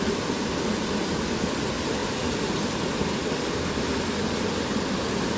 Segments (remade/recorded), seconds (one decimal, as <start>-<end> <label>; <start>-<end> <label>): 0.0-5.4 recorded